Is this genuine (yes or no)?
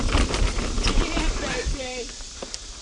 yes